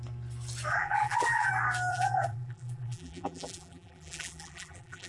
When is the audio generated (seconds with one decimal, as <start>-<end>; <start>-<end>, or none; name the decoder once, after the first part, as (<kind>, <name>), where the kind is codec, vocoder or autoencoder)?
0.7-1.5 (vocoder, BigVGAN v2); 1.9-5.1